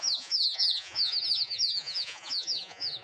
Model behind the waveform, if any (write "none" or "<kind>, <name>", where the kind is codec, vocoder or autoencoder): vocoder, Vocos